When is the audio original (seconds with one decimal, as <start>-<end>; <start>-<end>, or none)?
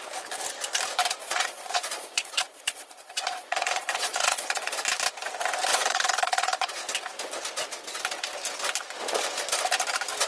0.0-1.2; 4.7-5.7; 6.7-10.3